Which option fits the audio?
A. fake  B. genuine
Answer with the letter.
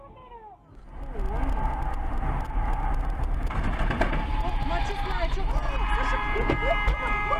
B